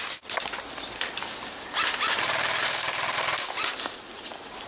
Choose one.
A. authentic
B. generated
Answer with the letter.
A